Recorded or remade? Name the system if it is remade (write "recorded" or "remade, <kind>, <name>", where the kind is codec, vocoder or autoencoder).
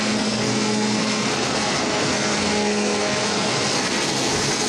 remade, codec, SNAC